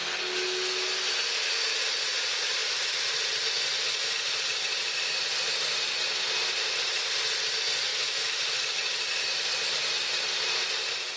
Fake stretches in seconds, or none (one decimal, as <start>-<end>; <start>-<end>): 2.6-5.7; 7.9-9.7